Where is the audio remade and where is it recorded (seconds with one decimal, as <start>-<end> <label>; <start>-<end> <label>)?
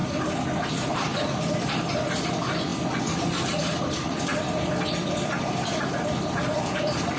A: 0.0-0.7 recorded; 0.7-7.2 remade